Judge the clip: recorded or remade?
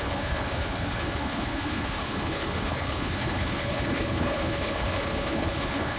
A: remade